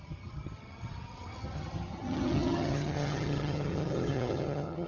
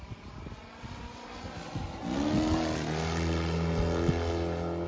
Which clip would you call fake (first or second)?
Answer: first